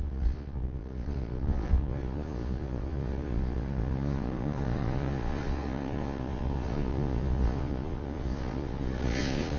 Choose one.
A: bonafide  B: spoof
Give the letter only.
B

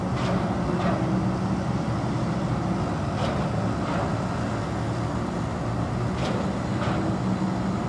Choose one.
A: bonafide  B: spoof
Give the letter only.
A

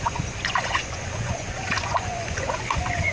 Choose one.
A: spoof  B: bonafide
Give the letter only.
A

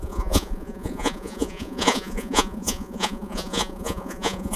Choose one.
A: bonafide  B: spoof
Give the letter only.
B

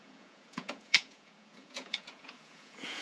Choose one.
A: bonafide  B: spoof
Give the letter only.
B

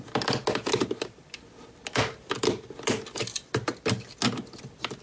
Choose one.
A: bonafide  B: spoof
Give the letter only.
A